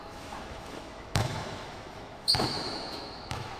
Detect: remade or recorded remade